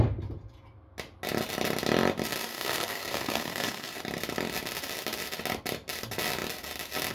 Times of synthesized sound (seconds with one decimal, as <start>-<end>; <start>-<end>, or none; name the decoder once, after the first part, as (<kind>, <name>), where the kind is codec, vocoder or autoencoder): 2.5-4.0 (codec, SNAC)